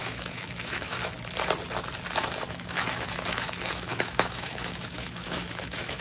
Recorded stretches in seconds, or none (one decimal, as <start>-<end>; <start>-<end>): 1.0-2.5